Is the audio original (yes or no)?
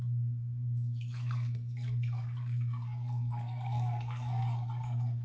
no